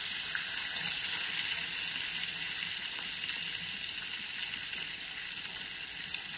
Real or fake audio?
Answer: real